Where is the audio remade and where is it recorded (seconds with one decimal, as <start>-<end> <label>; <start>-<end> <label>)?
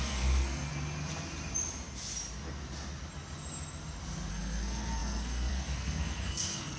0.0-0.7 remade; 0.7-4.3 recorded; 4.3-6.8 remade